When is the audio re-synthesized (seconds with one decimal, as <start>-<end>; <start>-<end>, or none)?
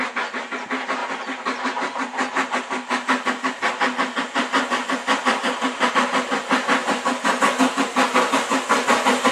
none